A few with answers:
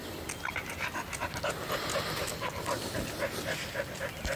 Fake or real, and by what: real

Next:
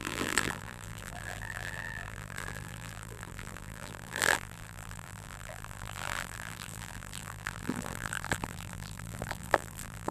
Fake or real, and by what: fake, vocoder, BigVGAN v2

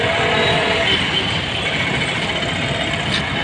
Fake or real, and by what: fake, vocoder, BigVGAN v2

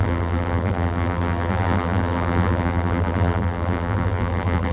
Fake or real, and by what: fake, vocoder, BigVGAN v2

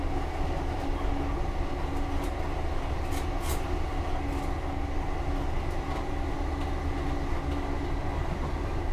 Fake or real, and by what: real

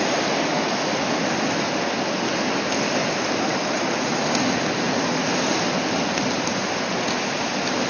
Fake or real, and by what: real